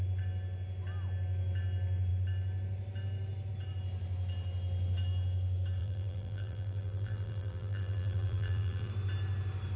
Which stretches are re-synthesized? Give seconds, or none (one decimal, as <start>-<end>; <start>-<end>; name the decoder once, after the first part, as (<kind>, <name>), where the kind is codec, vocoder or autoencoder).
5.8-8.9 (vocoder, BigVGAN v2)